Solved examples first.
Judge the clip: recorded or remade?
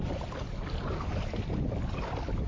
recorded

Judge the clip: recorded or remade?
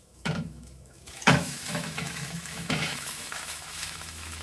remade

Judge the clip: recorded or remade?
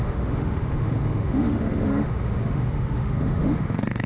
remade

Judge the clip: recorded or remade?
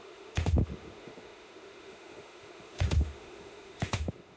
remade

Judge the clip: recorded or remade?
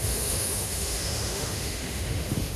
remade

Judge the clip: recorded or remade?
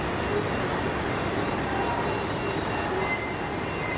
recorded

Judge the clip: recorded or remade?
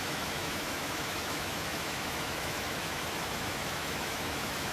remade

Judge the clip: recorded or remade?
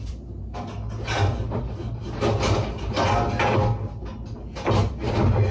recorded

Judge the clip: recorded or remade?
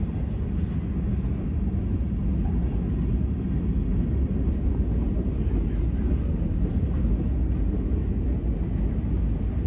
recorded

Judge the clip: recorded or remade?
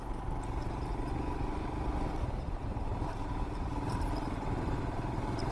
recorded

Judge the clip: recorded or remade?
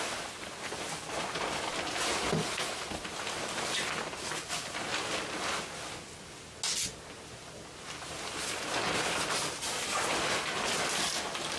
recorded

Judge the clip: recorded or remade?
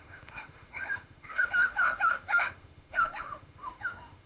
remade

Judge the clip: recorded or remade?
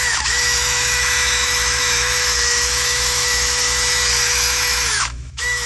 remade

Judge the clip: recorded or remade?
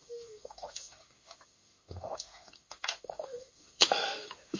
remade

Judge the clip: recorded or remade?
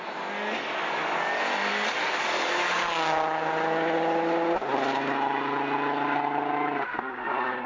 recorded